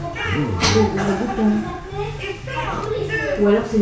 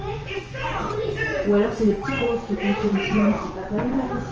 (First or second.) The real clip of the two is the first